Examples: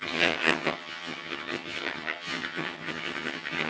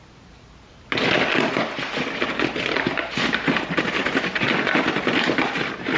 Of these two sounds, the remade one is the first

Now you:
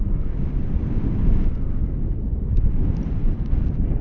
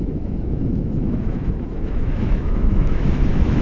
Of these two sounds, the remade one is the second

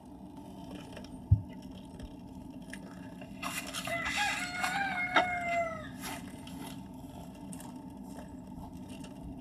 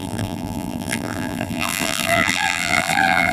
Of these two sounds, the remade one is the second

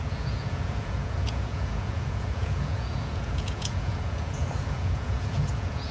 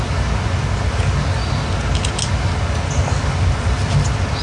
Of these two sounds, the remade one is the first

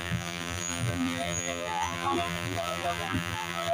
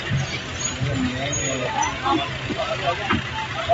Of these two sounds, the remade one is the first